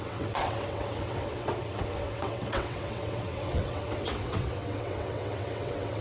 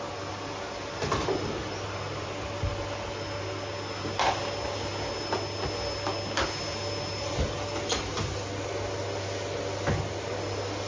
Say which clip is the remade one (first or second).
first